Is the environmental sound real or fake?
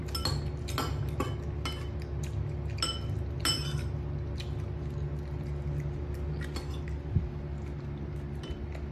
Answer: real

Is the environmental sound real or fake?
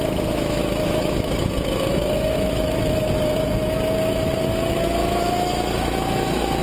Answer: fake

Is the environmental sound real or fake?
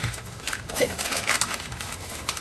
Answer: fake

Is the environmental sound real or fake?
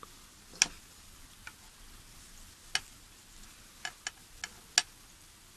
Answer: real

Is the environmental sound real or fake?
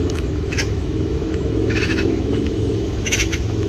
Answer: fake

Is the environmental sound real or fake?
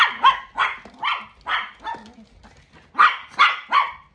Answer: real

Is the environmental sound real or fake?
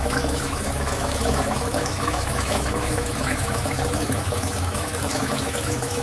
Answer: fake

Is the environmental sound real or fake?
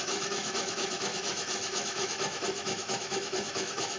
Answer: fake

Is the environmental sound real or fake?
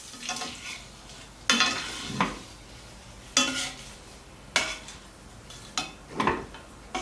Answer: real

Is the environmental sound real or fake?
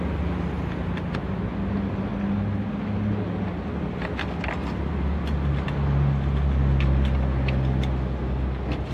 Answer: real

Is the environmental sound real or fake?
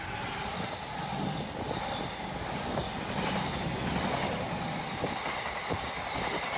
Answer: real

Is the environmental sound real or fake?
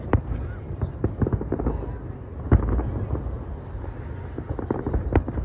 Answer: real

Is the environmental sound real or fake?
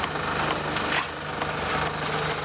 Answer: real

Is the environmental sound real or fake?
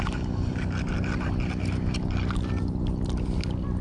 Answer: real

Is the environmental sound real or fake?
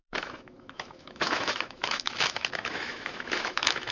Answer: fake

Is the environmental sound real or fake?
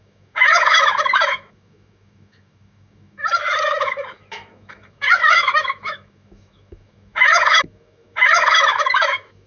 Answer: fake